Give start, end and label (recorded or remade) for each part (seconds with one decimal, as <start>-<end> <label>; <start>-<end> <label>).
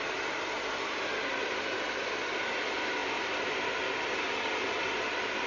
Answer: 0.0-5.5 recorded